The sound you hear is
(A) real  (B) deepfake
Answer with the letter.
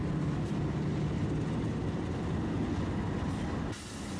A